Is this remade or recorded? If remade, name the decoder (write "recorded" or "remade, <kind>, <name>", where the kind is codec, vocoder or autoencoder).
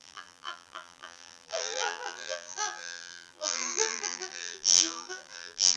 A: remade, vocoder, BigVGAN v2